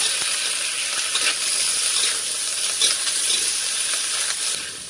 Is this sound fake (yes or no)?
no